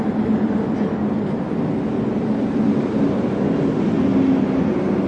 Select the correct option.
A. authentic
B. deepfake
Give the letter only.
A